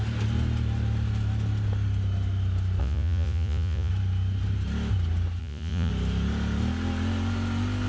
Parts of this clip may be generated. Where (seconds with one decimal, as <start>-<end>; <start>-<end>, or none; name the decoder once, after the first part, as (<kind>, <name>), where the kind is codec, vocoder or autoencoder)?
2.8-3.9 (vocoder, Vocos); 5.4-5.9

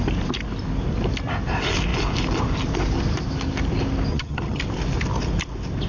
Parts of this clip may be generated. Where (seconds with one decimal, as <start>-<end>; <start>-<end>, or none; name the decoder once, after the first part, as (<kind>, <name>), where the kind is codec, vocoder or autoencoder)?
4.1-4.6 (vocoder, HiFi-GAN)

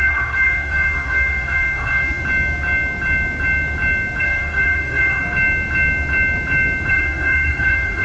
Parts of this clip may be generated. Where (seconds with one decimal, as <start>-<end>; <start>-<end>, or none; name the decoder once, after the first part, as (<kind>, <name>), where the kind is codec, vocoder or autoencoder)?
0.0-2.2 (codec, SNAC); 4.2-5.2; 6.9-8.0

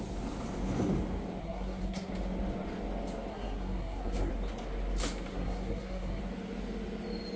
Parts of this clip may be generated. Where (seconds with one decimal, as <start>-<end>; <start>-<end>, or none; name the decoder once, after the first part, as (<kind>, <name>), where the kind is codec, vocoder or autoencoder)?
1.4-2.1 (codec, SNAC); 3.3-4.3; 5.3-6.2